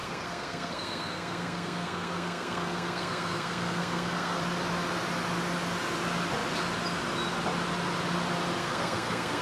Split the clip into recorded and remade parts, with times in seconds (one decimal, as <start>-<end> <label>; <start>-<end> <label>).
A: 0.0-4.4 remade; 4.4-8.6 recorded; 8.6-9.4 remade